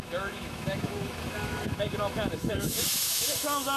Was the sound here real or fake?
fake